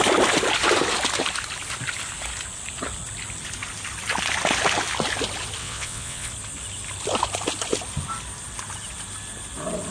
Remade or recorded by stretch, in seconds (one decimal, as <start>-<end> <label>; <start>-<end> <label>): 0.0-5.6 recorded; 5.6-6.3 remade; 6.3-9.9 recorded

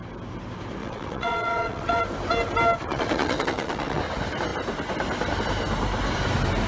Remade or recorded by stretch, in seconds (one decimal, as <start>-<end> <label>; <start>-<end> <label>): 0.0-0.8 recorded; 0.8-2.0 remade; 2.0-2.8 recorded; 2.8-4.0 remade; 4.0-6.7 recorded

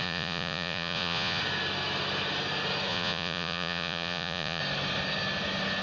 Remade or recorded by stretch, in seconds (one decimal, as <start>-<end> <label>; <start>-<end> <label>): 0.0-1.4 remade; 1.4-2.9 recorded; 2.9-4.6 remade; 4.6-5.8 recorded